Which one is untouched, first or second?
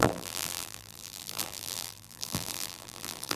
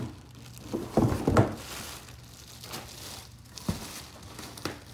second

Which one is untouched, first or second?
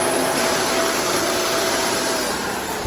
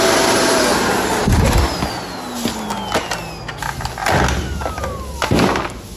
second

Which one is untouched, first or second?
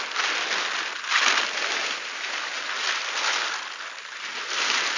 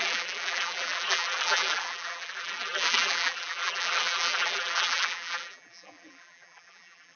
first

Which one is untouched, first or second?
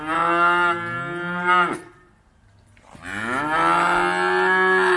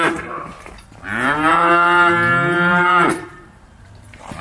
first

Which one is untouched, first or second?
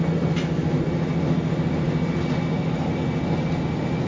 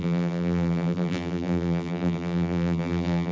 first